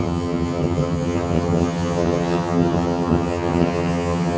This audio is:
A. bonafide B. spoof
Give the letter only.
B